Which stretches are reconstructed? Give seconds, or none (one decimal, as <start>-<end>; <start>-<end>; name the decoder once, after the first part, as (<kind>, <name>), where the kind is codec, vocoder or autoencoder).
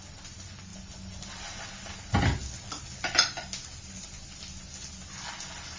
none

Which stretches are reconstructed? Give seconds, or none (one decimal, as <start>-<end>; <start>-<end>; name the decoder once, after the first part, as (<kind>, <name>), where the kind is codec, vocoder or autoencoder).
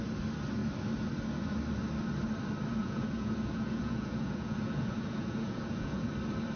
2.8-6.1 (vocoder, Vocos)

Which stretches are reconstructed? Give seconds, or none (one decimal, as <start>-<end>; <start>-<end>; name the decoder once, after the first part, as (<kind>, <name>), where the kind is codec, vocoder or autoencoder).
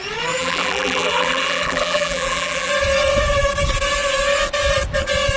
0.4-2.7 (vocoder, BigVGAN v2)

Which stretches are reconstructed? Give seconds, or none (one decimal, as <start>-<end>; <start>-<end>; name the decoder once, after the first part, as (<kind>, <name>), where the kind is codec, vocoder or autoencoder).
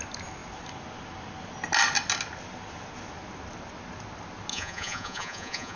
4.5-5.8 (vocoder, Vocos)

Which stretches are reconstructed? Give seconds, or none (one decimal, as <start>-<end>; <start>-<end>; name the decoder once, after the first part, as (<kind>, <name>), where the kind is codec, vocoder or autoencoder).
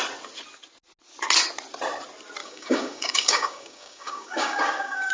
2.4-5.1 (codec, DAC)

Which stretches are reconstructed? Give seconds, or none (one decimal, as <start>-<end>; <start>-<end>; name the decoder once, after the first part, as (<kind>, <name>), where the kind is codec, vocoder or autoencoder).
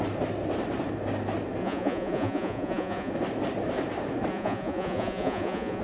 1.6-3.1 (vocoder, Vocos); 4.3-5.8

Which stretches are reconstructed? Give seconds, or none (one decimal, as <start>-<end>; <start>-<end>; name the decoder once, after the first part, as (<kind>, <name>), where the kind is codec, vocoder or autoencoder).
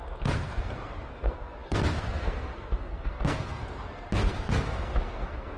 0.0-5.6 (codec, SNAC)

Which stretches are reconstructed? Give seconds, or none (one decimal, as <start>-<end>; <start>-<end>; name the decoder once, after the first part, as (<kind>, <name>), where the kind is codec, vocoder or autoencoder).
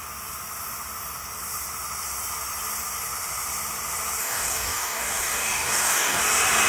4.2-6.2 (codec, DAC)